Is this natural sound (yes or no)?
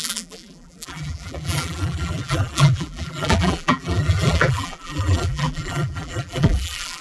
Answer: no